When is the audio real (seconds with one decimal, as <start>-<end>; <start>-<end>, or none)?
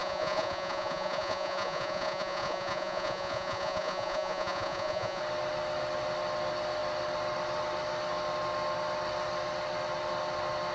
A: 5.2-10.7